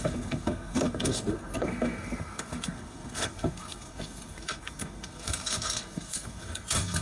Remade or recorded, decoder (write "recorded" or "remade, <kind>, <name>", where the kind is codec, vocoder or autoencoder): remade, codec, SNAC